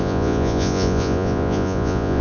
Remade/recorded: remade